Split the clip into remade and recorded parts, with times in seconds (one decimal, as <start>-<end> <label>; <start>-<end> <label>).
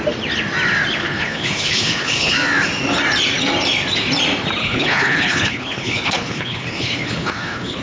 0.0-1.0 recorded; 1.0-2.3 remade; 2.3-4.6 recorded; 4.6-7.8 remade